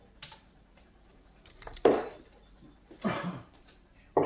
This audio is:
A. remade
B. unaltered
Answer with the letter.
A